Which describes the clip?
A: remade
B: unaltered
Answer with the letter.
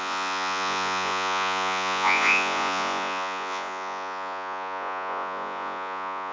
A